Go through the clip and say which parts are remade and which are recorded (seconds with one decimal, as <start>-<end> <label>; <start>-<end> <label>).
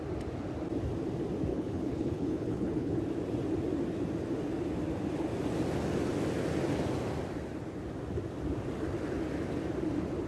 0.0-1.5 recorded; 1.5-3.0 remade; 3.0-10.3 recorded